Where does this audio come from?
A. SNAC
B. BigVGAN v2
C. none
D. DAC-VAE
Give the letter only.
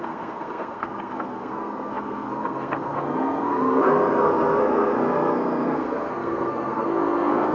A